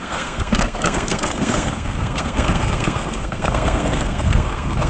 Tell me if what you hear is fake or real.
fake